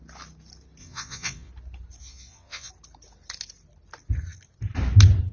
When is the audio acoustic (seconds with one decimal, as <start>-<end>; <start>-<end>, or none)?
0.0-0.8; 1.5-2.0; 2.7-5.3